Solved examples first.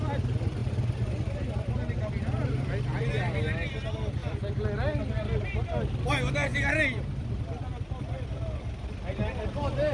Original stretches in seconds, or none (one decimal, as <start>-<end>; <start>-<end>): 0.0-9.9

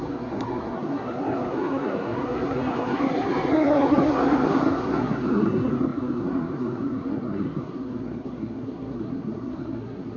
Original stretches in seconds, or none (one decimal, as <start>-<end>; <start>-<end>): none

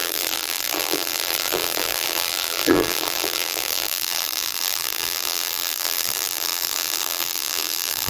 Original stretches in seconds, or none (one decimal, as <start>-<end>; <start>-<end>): none